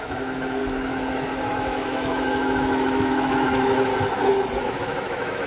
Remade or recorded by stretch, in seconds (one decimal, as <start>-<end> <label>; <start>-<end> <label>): 0.0-0.6 remade; 0.6-1.5 recorded; 1.5-3.9 remade; 3.9-4.6 recorded; 4.6-5.5 remade